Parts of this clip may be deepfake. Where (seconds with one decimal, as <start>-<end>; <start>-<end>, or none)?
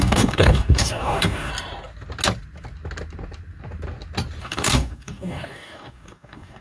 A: 0.0-1.5; 4.4-6.6